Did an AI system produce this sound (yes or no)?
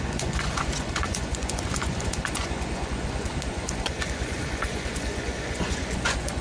yes